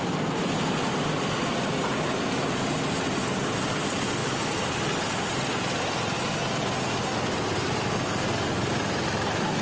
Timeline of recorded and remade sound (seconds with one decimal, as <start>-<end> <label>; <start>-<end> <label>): 0.0-9.6 recorded